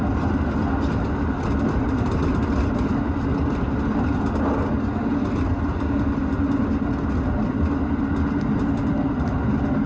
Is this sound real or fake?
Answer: real